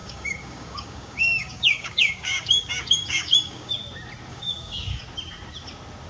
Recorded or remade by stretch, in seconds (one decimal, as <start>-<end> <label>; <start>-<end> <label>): 0.0-3.7 remade; 3.7-4.3 recorded; 4.3-5.0 remade; 5.0-6.1 recorded